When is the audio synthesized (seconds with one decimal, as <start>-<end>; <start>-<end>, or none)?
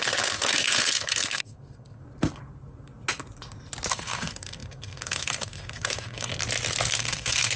0.0-2.0; 3.9-6.3; 6.9-7.6